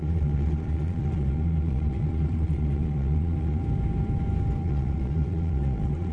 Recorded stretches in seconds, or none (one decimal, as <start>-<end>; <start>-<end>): 3.6-4.6